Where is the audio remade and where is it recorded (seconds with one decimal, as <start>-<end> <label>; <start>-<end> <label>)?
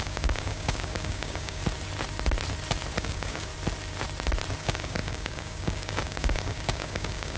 0.0-1.6 remade; 1.6-3.0 recorded; 3.0-3.5 remade; 3.5-4.6 recorded; 4.6-7.4 remade